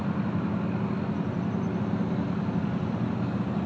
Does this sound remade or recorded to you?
recorded